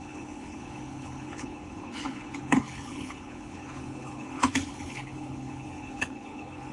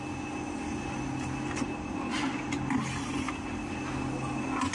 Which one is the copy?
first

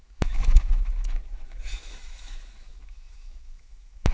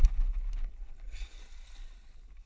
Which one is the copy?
first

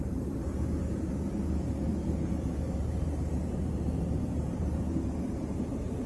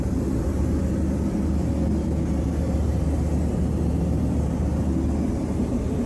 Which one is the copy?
first